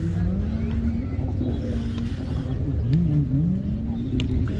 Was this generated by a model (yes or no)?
no